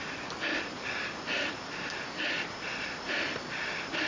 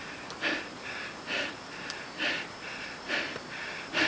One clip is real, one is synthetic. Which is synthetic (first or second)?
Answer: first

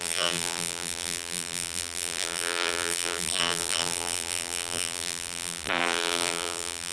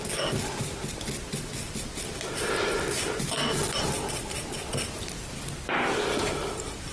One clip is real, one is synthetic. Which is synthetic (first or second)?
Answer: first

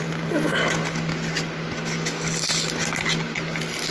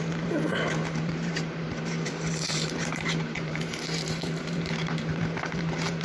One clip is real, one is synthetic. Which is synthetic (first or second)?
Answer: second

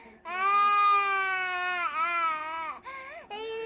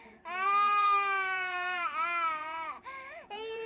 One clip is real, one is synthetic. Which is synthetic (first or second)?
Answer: second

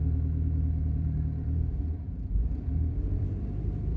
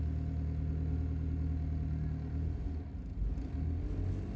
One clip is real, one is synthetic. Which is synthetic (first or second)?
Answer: first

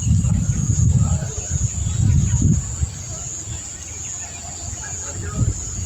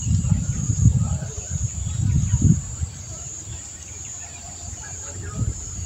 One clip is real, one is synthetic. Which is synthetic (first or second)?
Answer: second